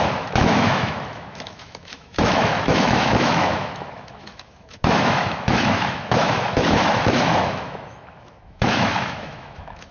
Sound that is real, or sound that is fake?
fake